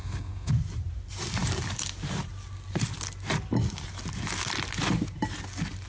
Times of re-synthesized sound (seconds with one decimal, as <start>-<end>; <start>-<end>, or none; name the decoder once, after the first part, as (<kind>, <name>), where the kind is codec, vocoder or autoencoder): 0.0-0.5 (codec, SNAC)